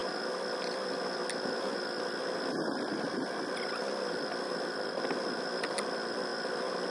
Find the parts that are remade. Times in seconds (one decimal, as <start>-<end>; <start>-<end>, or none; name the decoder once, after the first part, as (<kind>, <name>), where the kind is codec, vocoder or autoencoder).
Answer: 3.8-6.3 (vocoder, BigVGAN v2)